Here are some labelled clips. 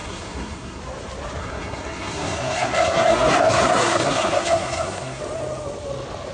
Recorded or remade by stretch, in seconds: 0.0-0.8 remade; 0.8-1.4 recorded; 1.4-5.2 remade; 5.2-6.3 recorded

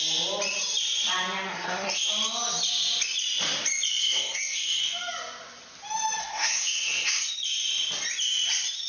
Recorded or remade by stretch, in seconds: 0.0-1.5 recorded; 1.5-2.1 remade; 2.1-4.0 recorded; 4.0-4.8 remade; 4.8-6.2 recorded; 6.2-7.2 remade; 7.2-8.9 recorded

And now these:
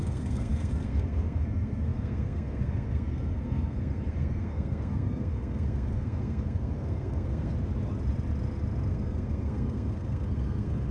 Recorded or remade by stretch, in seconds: 0.0-7.5 remade; 7.5-8.9 recorded; 8.9-10.9 remade

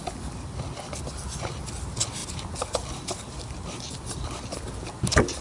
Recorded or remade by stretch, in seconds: 0.0-5.4 recorded